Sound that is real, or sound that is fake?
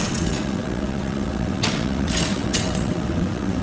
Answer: fake